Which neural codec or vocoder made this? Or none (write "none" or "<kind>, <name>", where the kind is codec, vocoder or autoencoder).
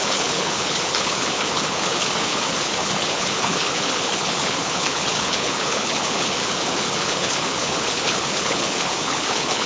codec, HILCodec